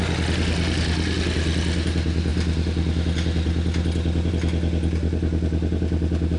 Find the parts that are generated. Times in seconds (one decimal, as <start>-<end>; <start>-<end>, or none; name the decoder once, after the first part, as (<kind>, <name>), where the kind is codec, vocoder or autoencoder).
none